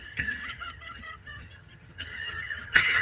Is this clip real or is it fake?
fake